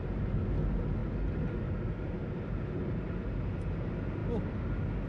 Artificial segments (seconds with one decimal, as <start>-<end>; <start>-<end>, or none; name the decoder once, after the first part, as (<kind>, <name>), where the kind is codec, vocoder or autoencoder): none